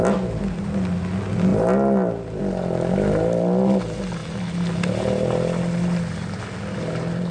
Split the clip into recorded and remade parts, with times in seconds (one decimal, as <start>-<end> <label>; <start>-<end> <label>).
0.0-7.3 recorded